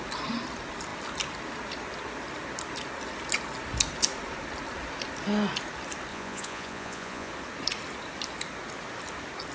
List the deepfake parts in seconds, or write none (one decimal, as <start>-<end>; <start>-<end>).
6.1-7.3